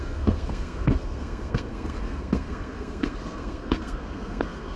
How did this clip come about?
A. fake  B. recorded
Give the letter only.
A